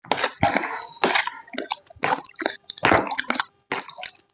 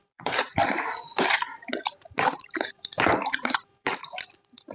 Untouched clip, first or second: first